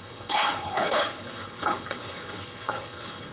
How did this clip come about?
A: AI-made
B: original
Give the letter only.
A